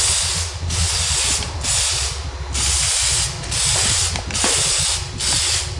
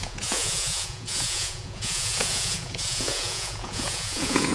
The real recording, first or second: first